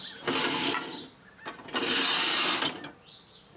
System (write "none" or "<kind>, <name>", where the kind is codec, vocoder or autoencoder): none